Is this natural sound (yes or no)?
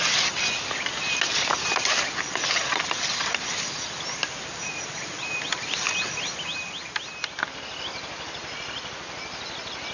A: yes